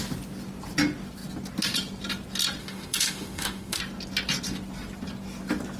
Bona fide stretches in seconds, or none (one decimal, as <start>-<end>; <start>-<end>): 0.0-2.6; 3.8-5.8